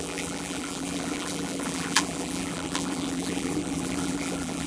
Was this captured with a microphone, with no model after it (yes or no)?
no